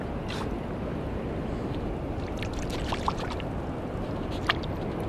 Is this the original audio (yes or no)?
yes